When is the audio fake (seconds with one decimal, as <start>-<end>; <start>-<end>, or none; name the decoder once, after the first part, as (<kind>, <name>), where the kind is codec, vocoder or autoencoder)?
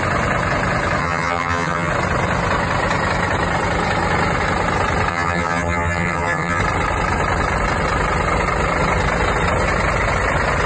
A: 1.0-1.9 (vocoder, HiFi-GAN); 5.1-6.6